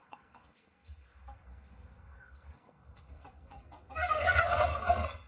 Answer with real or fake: fake